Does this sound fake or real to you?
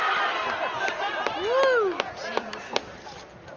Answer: real